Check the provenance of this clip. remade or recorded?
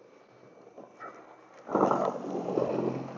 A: recorded